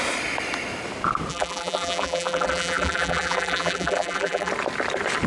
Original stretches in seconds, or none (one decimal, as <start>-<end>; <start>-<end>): 0.0-1.3; 4.5-5.3